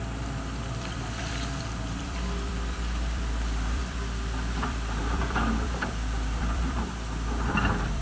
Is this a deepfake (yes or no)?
yes